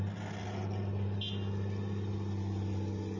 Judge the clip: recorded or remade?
recorded